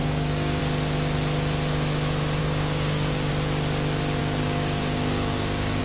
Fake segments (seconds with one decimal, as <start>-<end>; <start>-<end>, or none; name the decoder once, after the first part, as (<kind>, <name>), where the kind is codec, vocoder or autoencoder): 0.0-0.6 (codec, DAC); 2.4-3.3; 4.2-5.8